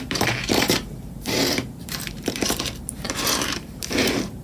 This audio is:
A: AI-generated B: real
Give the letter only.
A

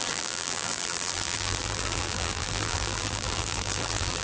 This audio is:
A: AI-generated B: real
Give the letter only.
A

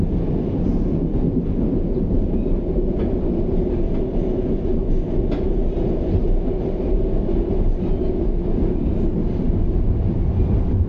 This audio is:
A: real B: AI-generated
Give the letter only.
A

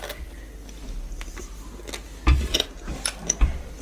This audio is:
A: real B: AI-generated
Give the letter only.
A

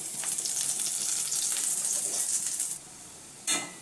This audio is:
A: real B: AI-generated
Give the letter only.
B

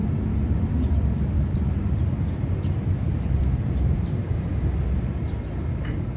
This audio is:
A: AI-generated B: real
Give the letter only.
A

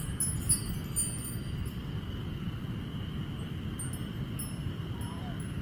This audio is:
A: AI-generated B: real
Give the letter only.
B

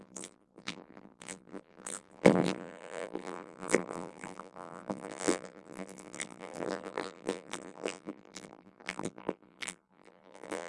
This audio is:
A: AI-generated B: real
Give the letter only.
A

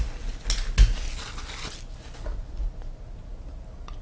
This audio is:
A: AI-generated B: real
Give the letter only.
B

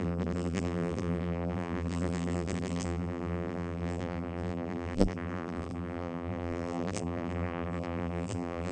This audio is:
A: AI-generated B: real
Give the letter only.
A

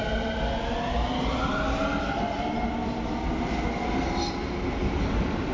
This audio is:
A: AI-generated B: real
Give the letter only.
B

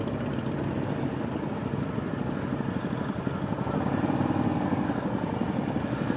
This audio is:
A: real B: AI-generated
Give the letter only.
A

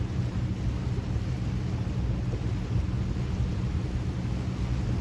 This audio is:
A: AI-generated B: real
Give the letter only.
B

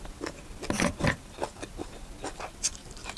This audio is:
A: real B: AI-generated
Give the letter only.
A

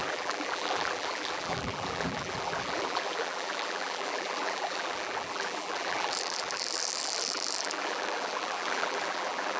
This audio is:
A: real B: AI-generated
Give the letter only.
B